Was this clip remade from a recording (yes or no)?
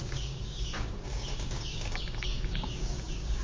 yes